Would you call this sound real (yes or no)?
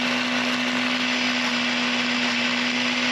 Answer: yes